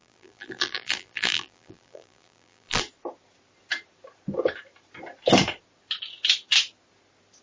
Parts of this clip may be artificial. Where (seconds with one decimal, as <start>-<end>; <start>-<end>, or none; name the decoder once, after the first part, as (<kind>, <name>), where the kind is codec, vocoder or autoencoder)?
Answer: 0.0-2.8 (vocoder, BigVGAN v2)